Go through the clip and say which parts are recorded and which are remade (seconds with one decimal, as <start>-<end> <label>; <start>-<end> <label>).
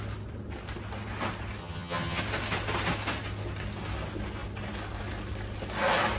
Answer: 0.0-1.6 recorded; 1.6-2.2 remade; 2.2-6.2 recorded